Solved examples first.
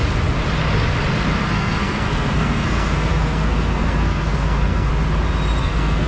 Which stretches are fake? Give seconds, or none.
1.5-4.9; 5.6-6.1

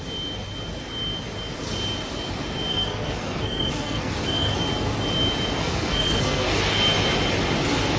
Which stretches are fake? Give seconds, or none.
2.7-4.6; 5.6-6.6

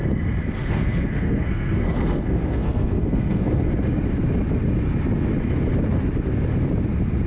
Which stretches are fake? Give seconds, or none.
0.4-3.6

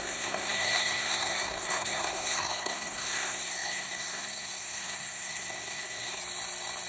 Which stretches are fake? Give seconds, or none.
0.0-6.2

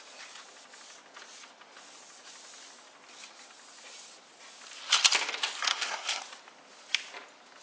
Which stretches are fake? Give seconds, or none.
5.7-6.2

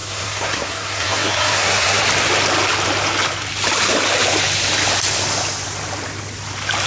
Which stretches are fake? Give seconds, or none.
0.0-2.0

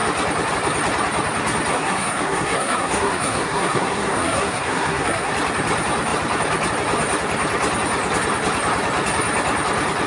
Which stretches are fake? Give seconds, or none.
1.7-5.3